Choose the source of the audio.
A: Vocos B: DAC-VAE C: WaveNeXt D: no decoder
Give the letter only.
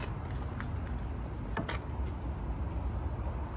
D